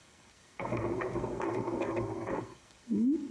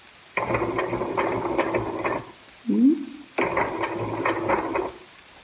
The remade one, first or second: first